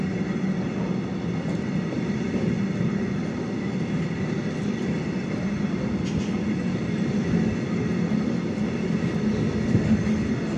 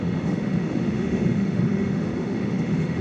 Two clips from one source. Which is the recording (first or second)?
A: first